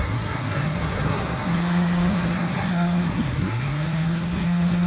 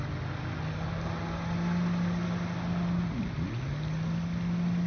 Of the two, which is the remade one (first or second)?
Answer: first